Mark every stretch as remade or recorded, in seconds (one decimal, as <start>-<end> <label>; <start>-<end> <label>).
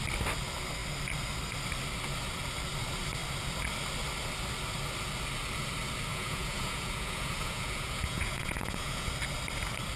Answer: 0.0-6.1 recorded; 6.1-9.1 remade; 9.1-10.0 recorded